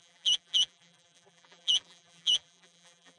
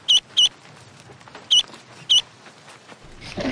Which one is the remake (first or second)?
first